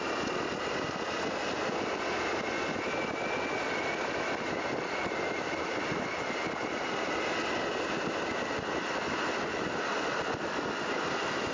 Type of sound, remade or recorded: recorded